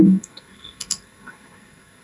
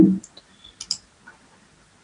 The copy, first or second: first